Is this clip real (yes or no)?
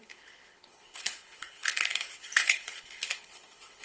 no